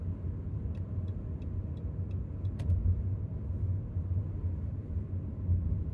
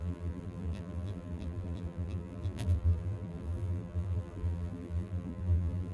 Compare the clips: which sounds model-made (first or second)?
second